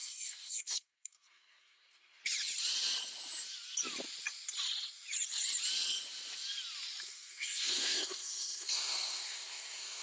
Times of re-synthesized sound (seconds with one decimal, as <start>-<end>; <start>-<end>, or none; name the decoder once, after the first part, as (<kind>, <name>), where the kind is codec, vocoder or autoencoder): 0.0-2.2 (codec, SNAC); 7.0-10.0